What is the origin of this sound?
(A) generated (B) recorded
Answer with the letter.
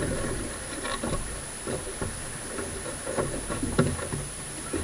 B